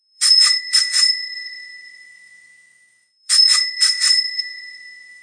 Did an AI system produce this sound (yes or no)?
yes